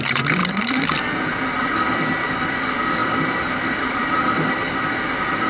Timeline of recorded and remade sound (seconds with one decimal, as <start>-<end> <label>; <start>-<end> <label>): 0.0-5.5 remade

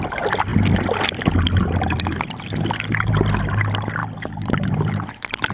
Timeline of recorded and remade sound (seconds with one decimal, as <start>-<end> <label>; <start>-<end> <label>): 0.0-4.0 recorded; 4.0-5.5 remade